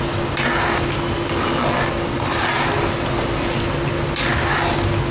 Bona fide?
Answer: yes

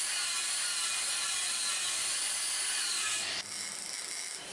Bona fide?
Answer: yes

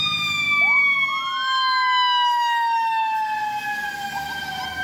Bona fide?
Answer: yes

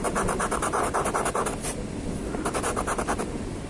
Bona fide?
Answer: no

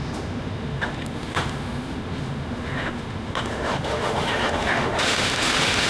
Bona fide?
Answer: no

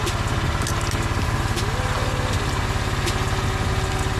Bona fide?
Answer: yes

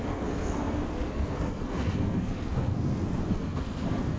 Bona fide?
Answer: no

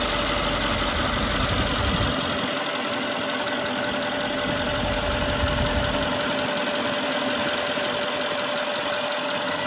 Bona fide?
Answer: yes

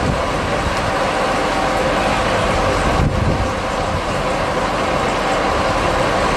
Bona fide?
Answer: yes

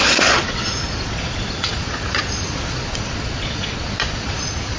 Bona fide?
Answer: no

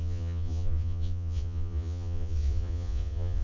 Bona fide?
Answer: no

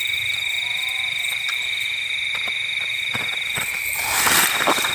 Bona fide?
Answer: yes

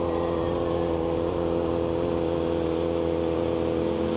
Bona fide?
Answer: yes